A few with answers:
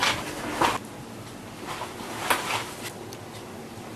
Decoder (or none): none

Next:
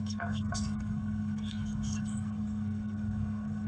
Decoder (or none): codec, SNAC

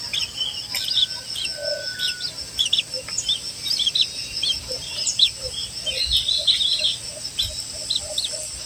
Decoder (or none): none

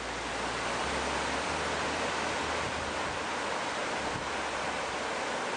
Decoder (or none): none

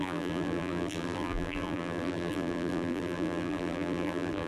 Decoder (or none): vocoder, BigVGAN v2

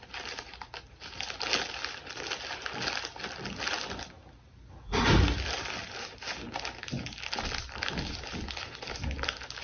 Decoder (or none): none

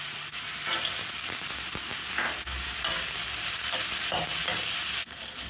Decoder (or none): none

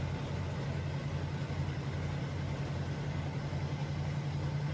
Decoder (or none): none